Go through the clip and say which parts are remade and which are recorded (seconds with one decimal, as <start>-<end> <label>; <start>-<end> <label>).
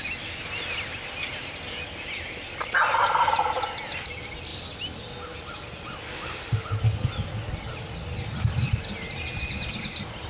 0.0-4.5 recorded; 4.5-6.0 remade; 6.0-10.3 recorded